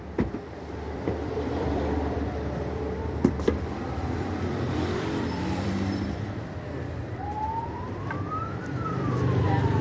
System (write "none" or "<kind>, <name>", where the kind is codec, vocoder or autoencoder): vocoder, BigVGAN v2